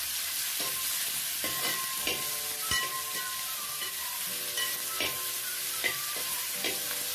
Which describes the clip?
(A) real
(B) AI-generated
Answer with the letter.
A